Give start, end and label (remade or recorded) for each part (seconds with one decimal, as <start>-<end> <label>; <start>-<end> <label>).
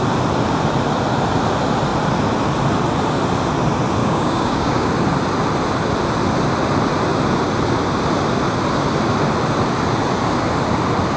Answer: 0.0-4.0 recorded; 4.0-4.9 remade; 4.9-11.2 recorded